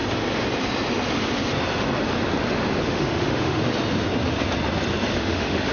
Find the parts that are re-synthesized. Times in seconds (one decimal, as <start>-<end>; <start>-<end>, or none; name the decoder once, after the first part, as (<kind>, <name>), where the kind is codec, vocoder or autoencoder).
2.8-3.6 (autoencoder, DAC-VAE); 5.2-5.7